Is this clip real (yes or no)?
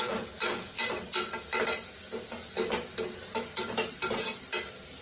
yes